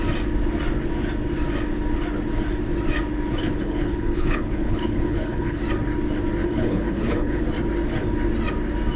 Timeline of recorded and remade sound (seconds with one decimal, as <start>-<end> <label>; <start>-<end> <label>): 0.0-3.4 recorded; 3.4-5.6 remade; 5.6-6.4 recorded; 6.4-7.4 remade; 7.4-9.0 recorded